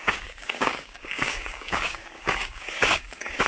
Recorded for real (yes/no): no